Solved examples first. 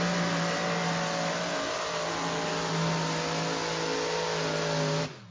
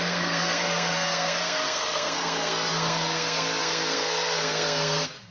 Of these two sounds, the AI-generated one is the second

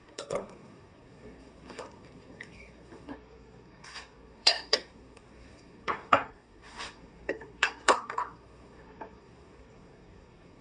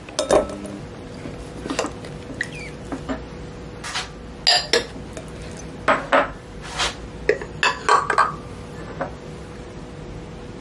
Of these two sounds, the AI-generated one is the first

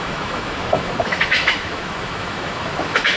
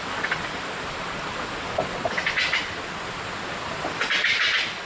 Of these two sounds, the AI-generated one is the first